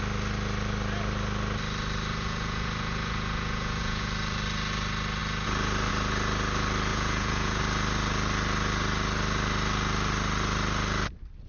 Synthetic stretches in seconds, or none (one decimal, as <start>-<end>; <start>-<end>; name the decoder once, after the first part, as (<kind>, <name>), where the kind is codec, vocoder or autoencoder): 2.1-4.1 (vocoder, Vocos); 6.9-7.6